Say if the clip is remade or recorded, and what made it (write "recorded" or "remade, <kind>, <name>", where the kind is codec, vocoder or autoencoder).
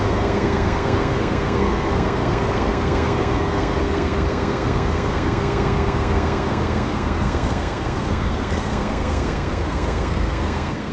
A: remade, codec, SNAC